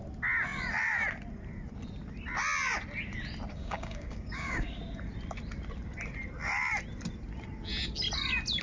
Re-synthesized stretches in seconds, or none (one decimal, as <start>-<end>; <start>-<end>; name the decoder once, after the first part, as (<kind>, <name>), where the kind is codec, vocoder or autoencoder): 3.5-4.8 (codec, DAC)